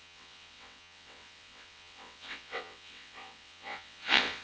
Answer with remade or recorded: remade